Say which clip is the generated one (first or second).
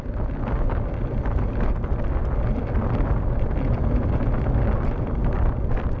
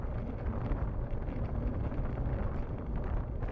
second